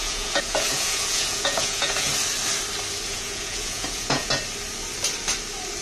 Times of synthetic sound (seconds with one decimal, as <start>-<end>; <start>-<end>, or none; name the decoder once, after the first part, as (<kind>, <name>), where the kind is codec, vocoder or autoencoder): 0.0-2.1 (vocoder, Vocos); 3.1-4.3